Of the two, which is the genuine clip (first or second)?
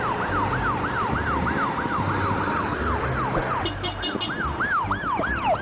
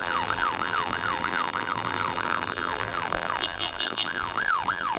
first